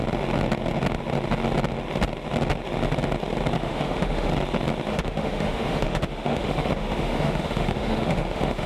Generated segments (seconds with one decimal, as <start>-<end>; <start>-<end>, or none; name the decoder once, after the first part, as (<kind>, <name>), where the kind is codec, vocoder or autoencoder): 3.6-4.3 (autoencoder, DAC-VAE); 4.9-8.7